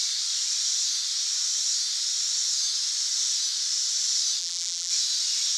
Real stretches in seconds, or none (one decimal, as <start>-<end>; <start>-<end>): 0.0-4.4; 4.9-5.6